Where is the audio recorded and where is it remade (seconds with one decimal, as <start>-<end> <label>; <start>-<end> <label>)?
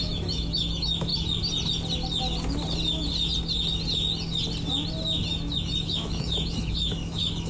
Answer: 0.0-1.1 remade; 1.1-5.6 recorded; 5.6-7.5 remade